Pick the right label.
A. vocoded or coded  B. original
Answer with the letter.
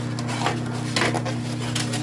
B